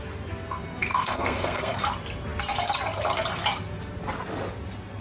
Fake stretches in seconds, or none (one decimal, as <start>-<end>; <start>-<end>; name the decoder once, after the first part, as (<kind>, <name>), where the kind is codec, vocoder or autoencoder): 0.9-1.8 (codec, SNAC)